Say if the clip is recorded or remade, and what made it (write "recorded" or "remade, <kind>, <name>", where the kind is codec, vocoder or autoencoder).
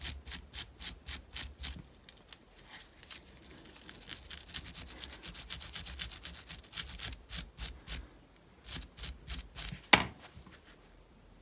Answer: recorded